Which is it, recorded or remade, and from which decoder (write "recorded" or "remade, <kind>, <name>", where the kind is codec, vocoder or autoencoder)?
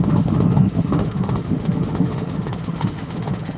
remade, autoencoder, DAC-VAE